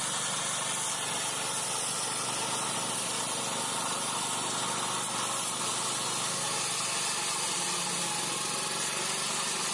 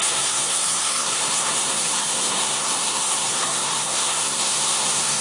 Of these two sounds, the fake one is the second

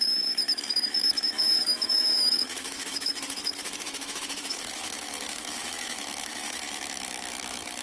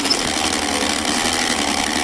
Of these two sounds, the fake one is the first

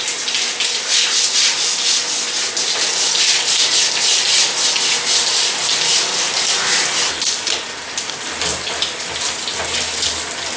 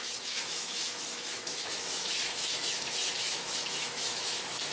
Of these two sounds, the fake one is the second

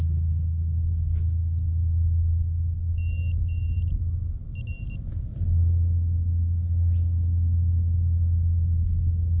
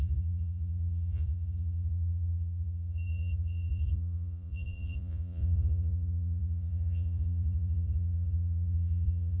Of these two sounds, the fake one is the second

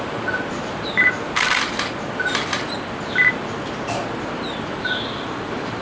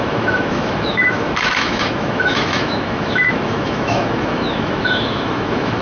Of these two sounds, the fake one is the second